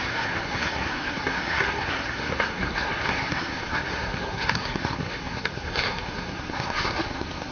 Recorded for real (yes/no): no